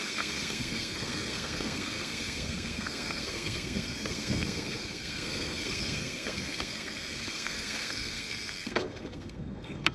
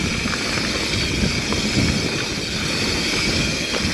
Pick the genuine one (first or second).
second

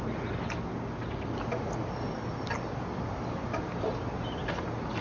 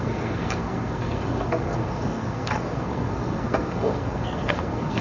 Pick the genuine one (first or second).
first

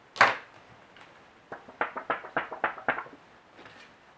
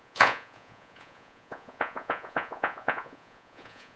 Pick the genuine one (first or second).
first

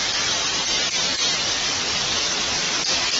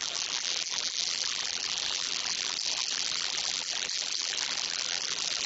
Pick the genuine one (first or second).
first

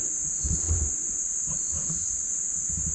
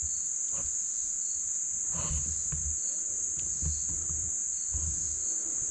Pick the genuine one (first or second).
second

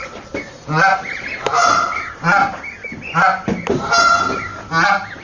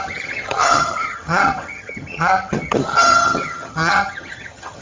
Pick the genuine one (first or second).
first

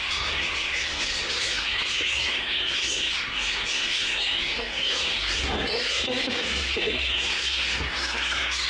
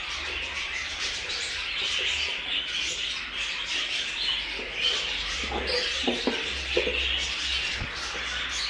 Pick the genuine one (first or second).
second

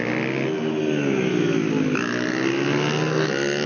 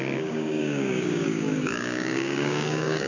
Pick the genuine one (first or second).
first